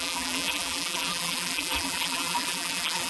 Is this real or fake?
fake